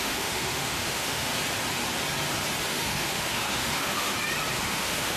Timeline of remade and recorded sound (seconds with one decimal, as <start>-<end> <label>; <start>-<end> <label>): 0.0-1.3 remade; 1.3-2.7 recorded; 2.7-4.1 remade; 4.1-4.6 recorded; 4.6-5.2 remade